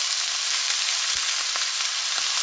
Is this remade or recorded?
recorded